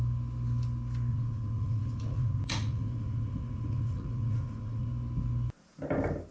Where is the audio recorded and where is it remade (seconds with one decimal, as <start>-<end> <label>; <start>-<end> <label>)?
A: 0.0-1.1 recorded; 1.1-4.9 remade; 4.9-6.3 recorded